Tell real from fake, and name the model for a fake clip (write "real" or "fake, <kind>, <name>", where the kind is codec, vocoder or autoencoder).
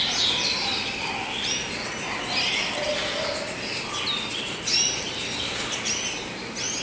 real